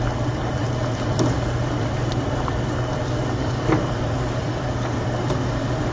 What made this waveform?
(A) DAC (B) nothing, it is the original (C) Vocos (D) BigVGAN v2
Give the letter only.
D